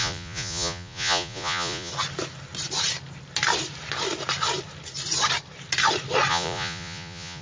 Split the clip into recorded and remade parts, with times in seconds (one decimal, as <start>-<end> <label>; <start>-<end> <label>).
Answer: 0.0-1.9 remade; 1.9-6.3 recorded; 6.3-7.4 remade